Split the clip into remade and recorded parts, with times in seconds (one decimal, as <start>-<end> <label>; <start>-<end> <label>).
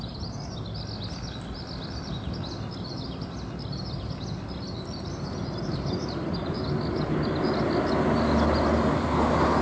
0.0-9.6 recorded